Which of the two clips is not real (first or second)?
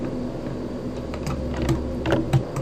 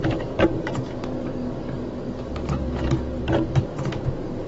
second